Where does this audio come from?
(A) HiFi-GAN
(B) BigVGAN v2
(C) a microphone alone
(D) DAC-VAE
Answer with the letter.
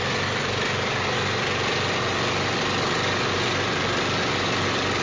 C